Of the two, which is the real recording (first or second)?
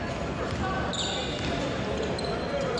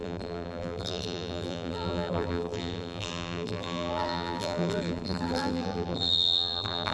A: first